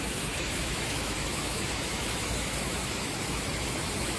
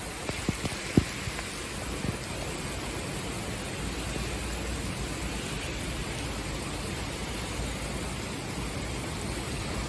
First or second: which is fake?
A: first